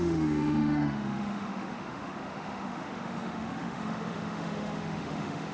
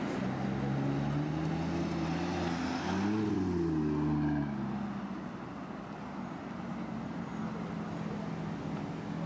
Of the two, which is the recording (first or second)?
second